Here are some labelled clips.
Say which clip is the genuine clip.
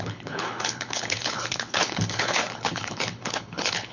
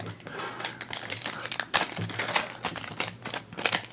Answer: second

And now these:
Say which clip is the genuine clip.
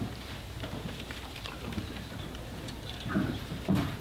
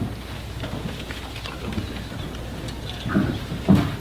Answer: second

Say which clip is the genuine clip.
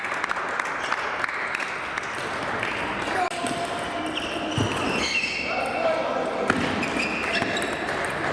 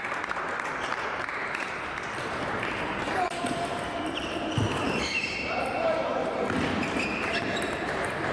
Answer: first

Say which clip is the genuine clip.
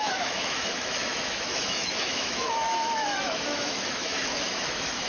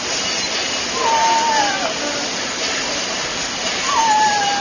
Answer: second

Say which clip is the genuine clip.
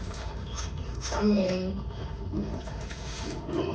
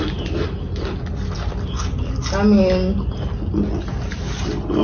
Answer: second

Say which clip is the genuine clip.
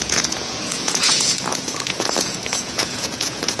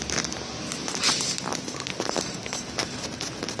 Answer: second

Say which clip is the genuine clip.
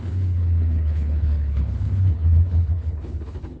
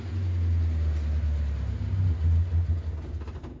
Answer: second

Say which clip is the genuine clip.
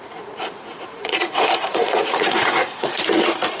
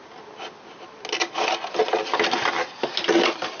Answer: second